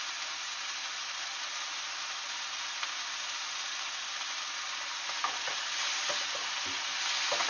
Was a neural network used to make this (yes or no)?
no